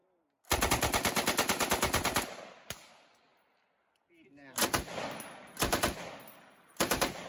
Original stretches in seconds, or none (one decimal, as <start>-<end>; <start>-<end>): 0.0-0.7; 3.3-6.8